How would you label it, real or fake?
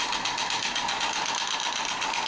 real